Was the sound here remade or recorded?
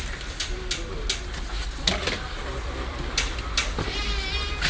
recorded